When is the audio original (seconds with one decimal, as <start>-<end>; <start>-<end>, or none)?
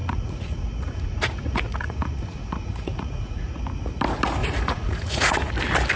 3.6-4.4; 5.5-6.0